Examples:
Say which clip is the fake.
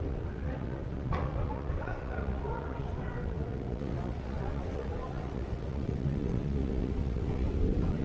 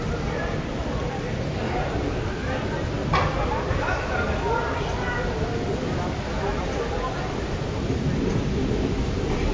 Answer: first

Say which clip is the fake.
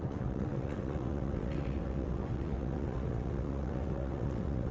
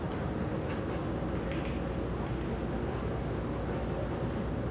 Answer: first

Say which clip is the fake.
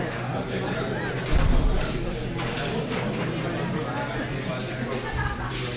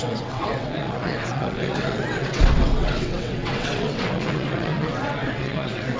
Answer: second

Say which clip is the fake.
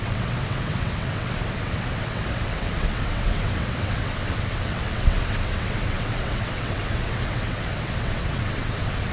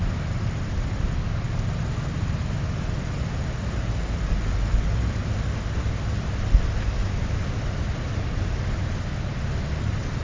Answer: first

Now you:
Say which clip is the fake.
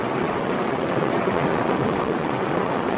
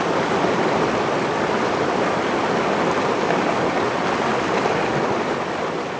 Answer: first